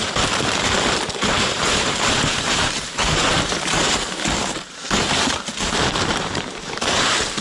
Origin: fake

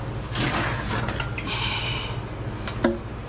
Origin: real